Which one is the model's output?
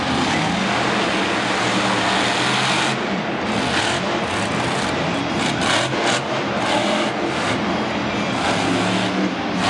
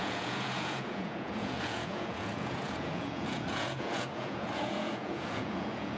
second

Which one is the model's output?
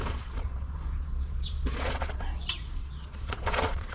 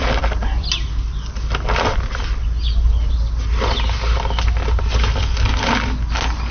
first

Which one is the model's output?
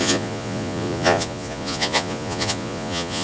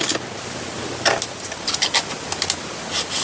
first